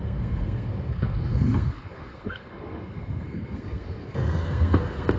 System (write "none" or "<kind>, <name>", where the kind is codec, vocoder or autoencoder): codec, SNAC